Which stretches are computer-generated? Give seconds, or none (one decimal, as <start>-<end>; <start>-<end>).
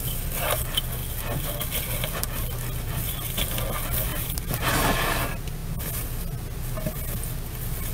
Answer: 4.1-4.7